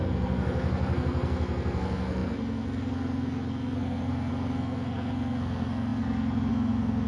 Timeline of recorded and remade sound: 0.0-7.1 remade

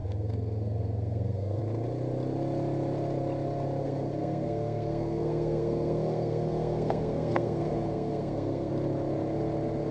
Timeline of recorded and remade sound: 0.0-1.6 remade; 1.6-3.8 recorded; 3.8-8.7 remade; 8.7-9.9 recorded

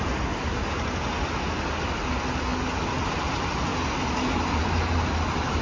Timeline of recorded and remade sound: 0.0-5.6 recorded

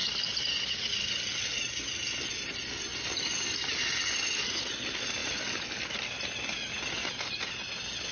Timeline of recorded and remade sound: 0.0-5.2 recorded; 5.2-5.8 remade; 5.8-8.1 recorded

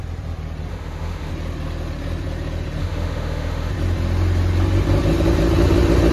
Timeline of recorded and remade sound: 0.0-0.7 recorded; 0.7-1.3 remade; 1.3-2.8 recorded; 2.8-3.7 remade; 3.7-6.1 recorded

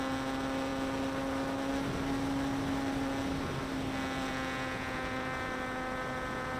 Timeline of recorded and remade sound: 0.0-6.6 recorded

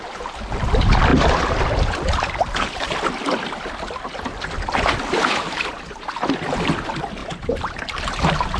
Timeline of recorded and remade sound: 0.0-7.2 recorded; 7.2-7.8 remade; 7.8-8.6 recorded

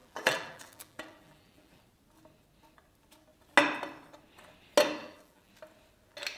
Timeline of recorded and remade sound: 0.0-1.8 remade; 1.8-5.0 recorded; 5.0-5.5 remade; 5.5-6.4 recorded